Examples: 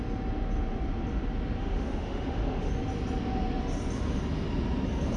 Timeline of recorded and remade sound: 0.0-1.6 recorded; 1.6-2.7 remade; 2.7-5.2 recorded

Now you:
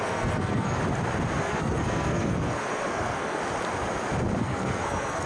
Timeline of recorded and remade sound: 0.0-0.8 remade; 0.8-1.4 recorded; 1.4-3.4 remade; 3.4-4.4 recorded; 4.4-5.3 remade

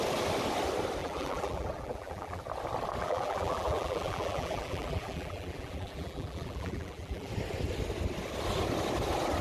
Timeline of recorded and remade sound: 0.0-1.0 recorded; 1.0-2.4 remade; 2.4-3.0 recorded; 3.0-7.3 remade; 7.3-9.4 recorded

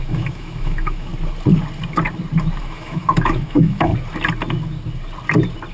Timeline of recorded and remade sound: 0.0-1.1 remade; 1.1-2.6 recorded; 2.6-3.9 remade; 3.9-5.7 recorded

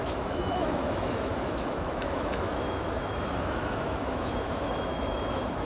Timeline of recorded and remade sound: 0.0-5.6 remade

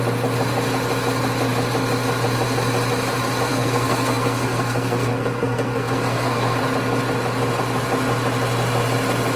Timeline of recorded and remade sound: 0.0-3.5 recorded; 3.5-6.6 remade; 6.6-9.4 recorded